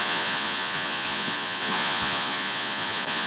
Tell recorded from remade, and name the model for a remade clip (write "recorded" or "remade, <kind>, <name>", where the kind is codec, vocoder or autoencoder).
remade, vocoder, Vocos